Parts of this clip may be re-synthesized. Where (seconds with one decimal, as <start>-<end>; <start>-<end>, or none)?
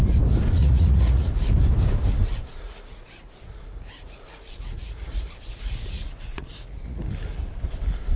0.6-1.3; 2.5-7.0